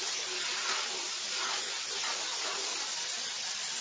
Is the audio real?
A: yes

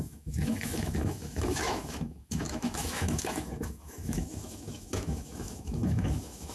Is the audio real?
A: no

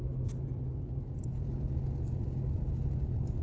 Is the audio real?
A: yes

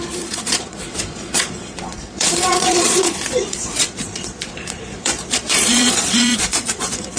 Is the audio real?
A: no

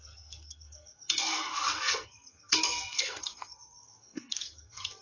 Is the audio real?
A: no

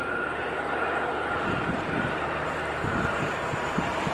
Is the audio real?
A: no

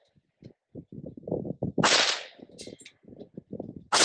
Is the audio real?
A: yes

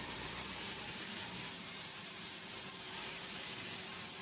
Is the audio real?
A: no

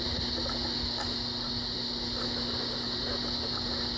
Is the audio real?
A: yes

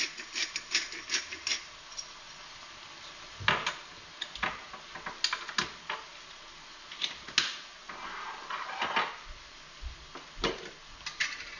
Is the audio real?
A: yes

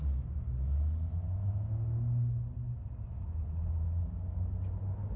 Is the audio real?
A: yes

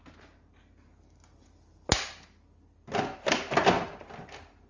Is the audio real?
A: yes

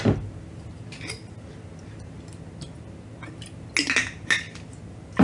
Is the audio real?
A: yes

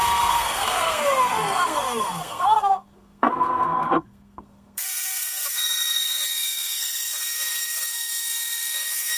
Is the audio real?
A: no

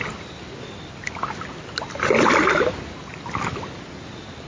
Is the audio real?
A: yes